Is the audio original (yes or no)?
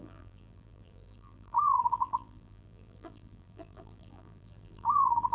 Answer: no